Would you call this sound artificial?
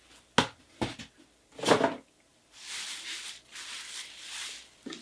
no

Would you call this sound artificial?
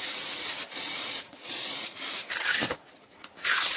yes